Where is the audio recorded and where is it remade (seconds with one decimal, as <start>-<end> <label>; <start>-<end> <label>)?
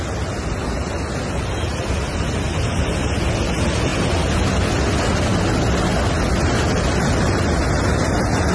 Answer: 0.0-8.5 recorded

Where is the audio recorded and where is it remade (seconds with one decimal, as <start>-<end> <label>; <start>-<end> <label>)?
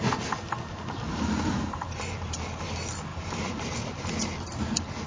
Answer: 0.0-1.1 recorded; 1.1-2.6 remade; 2.6-3.1 recorded; 3.1-3.8 remade; 3.8-5.1 recorded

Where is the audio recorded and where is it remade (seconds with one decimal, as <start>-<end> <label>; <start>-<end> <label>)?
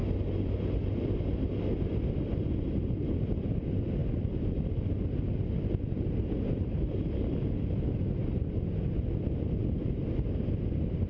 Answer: 0.0-11.1 recorded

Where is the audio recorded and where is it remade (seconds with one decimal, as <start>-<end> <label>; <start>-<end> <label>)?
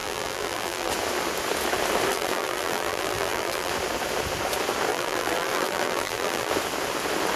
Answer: 0.0-0.9 remade; 0.9-2.1 recorded; 2.1-3.7 remade; 3.7-4.9 recorded; 4.9-6.5 remade; 6.5-7.4 recorded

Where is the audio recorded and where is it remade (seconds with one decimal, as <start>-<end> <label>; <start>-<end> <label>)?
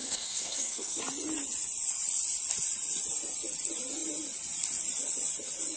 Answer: 0.0-1.0 remade; 1.0-5.8 recorded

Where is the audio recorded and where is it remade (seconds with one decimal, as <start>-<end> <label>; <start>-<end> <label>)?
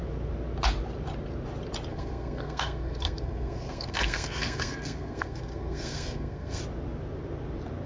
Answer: 0.0-1.9 recorded; 1.9-6.6 remade; 6.6-7.9 recorded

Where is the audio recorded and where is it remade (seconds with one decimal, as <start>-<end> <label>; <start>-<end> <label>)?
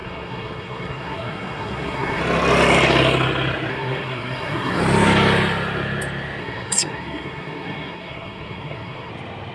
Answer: 0.0-2.2 remade; 2.2-3.7 recorded; 3.7-4.8 remade; 4.8-6.4 recorded; 6.4-9.1 remade; 9.1-9.5 recorded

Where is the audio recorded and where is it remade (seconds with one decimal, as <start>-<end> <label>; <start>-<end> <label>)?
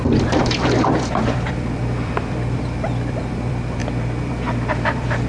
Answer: 0.0-3.8 remade; 3.8-4.3 recorded; 4.3-5.3 remade